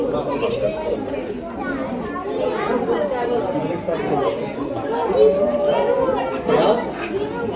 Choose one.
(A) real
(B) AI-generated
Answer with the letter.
A